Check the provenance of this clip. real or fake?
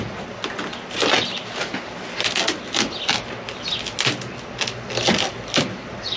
real